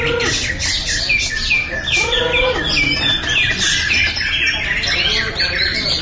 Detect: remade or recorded recorded